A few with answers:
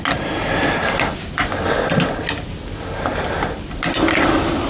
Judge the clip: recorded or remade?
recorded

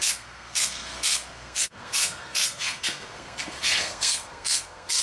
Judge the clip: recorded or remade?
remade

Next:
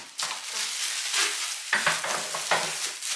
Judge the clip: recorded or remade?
recorded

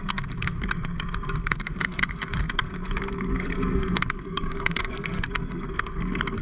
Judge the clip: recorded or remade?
remade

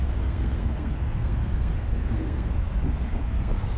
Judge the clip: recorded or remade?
remade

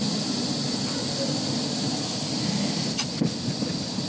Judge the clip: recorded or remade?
recorded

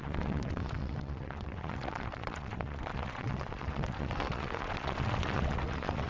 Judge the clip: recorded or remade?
remade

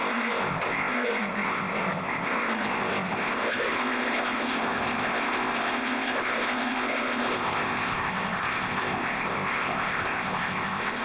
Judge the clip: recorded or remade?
remade